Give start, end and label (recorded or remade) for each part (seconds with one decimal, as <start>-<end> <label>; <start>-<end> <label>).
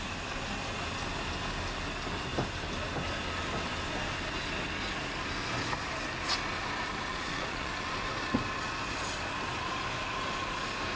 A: 0.0-7.1 recorded; 7.1-7.7 remade; 7.7-11.0 recorded